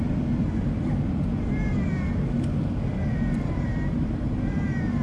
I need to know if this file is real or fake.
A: fake